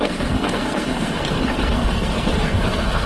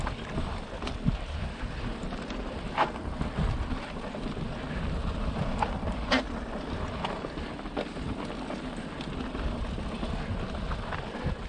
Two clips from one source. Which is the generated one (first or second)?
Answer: first